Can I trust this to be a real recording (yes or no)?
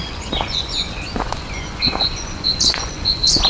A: no